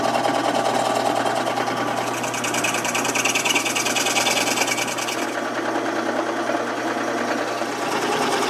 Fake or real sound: real